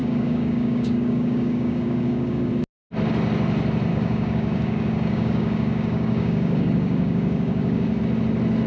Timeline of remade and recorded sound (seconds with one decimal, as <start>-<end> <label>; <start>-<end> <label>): 0.0-2.5 remade; 2.5-3.9 recorded; 3.9-8.0 remade; 8.0-8.7 recorded